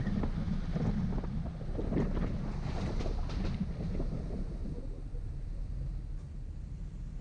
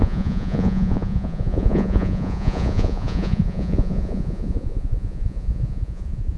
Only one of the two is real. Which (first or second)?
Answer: first